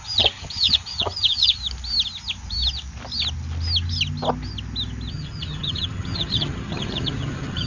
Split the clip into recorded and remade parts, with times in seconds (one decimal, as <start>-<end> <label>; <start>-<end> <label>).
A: 0.0-1.6 remade; 1.6-5.1 recorded; 5.1-7.7 remade